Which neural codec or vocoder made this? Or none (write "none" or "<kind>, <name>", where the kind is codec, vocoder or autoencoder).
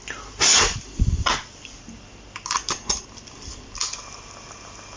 none